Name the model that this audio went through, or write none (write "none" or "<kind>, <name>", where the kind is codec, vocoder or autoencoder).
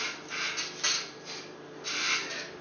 none